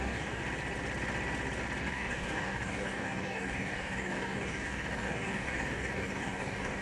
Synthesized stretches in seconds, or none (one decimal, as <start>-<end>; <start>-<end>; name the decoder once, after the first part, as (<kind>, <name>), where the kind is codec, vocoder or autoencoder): 0.0-0.4 (codec, DAC); 1.8-6.8